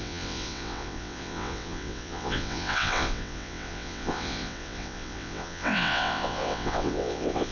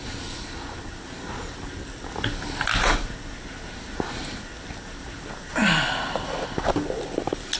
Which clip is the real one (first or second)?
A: second